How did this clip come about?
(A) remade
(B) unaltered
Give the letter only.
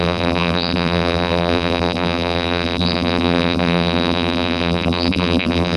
A